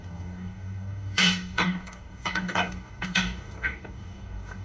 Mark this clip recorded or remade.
remade